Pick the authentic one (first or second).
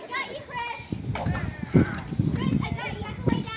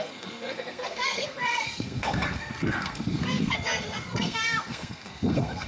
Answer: first